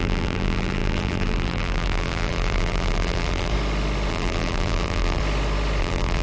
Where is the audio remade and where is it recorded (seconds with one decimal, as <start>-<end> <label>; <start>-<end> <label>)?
0.0-3.5 remade; 3.5-4.1 recorded; 4.1-5.2 remade; 5.2-5.8 recorded; 5.8-6.2 remade